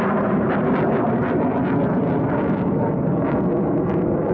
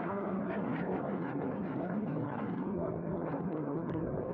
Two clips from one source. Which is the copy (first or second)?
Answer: second